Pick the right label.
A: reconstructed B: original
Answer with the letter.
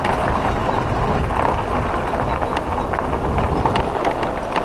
B